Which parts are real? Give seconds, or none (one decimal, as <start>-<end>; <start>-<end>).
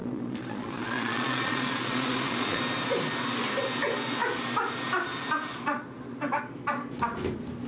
2.6-7.7